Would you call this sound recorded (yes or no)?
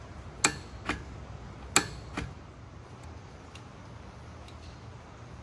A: yes